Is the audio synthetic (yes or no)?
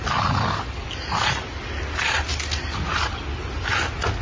no